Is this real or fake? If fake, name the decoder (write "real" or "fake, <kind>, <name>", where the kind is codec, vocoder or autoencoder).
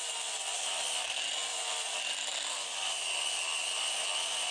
fake, vocoder, BigVGAN v2